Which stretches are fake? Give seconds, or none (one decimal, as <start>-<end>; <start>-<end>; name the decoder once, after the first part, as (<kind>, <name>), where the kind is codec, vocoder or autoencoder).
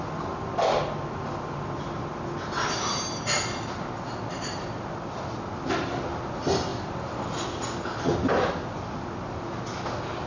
none